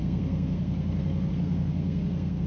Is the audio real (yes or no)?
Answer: no